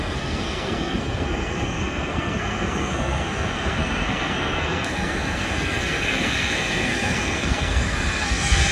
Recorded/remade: remade